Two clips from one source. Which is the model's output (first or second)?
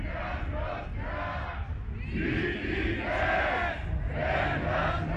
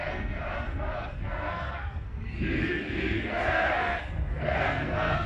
second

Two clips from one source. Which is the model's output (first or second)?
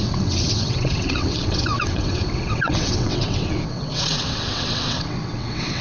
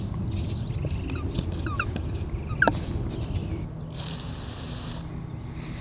first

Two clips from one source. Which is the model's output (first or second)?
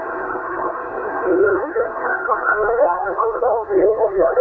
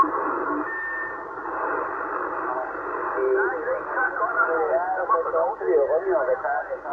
first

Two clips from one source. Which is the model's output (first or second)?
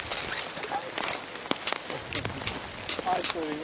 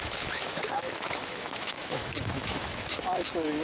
second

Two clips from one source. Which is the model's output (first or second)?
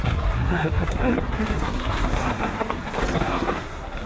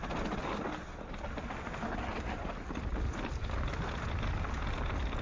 first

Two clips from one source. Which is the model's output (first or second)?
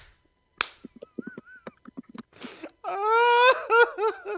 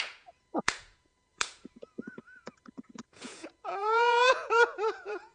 second